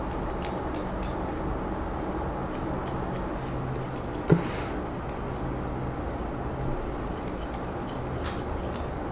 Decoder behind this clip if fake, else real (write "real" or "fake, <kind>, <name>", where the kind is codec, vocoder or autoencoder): real